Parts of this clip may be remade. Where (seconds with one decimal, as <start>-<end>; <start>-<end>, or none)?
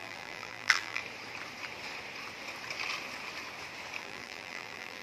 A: 0.0-1.0; 4.0-5.0